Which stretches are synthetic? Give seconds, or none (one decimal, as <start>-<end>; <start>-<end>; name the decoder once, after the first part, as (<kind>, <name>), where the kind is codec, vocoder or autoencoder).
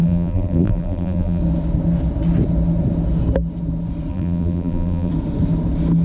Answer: 0.0-1.4 (vocoder, BigVGAN v2); 4.1-5.1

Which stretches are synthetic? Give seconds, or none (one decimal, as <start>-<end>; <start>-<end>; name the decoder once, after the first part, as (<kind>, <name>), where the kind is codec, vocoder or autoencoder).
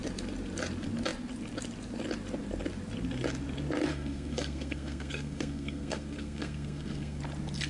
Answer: 3.9-7.2 (codec, SNAC)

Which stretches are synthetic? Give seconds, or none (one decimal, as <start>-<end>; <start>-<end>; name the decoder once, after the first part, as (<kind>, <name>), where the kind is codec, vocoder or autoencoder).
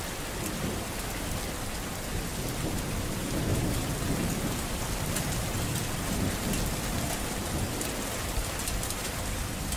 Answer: 3.5-5.0 (vocoder, BigVGAN v2)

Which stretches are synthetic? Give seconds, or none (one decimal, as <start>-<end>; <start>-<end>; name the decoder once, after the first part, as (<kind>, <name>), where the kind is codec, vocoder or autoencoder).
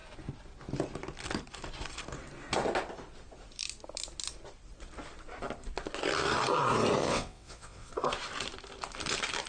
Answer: 7.0-7.9 (vocoder, WaveNeXt)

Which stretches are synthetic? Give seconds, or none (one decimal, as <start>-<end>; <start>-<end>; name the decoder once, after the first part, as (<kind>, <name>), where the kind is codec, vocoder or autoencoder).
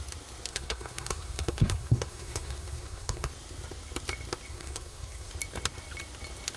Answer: 0.5-3.3 (codec, SNAC); 4.5-5.3